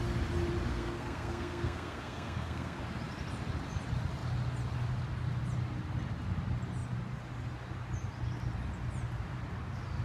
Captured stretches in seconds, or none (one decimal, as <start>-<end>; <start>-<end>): 0.0-0.7; 2.8-10.0